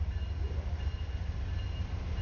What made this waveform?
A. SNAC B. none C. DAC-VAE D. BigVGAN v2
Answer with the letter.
B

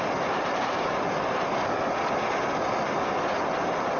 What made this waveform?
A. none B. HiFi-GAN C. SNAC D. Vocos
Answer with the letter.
A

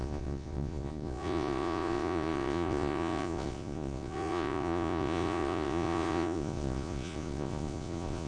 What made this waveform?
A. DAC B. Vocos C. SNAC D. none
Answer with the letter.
B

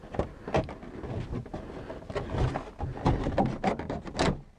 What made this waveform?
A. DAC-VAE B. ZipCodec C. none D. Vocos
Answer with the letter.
C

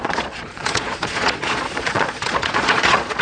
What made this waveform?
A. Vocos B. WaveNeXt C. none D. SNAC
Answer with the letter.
A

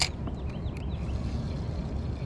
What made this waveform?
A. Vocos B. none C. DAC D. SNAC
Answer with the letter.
B